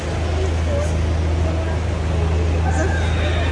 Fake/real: real